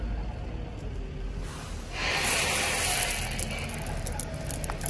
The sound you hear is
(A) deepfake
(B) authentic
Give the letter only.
B